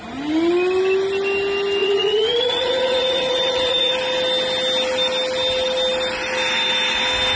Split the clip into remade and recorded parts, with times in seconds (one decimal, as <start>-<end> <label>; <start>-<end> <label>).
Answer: 0.0-1.8 recorded; 1.8-3.9 remade; 3.9-7.3 recorded